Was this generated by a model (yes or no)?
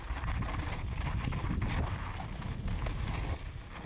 no